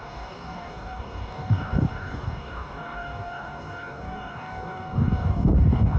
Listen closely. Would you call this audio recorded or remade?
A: remade